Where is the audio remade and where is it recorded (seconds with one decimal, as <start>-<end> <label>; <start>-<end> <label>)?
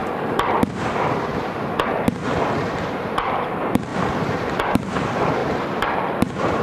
0.0-6.6 remade